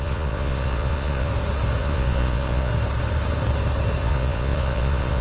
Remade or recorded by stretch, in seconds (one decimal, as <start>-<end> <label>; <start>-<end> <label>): 0.0-1.3 remade; 1.3-1.8 recorded; 1.8-2.7 remade; 2.7-4.0 recorded; 4.0-5.2 remade